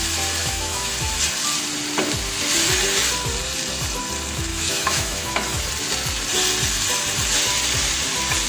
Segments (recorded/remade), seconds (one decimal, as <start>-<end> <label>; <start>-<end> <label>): 0.0-0.4 recorded; 0.4-0.9 remade; 0.9-4.5 recorded; 4.5-5.7 remade; 5.7-8.5 recorded